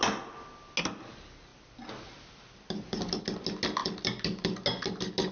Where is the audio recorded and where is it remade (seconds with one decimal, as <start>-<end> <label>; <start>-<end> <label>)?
0.0-5.3 recorded